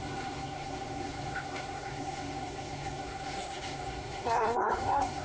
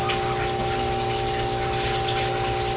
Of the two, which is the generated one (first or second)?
first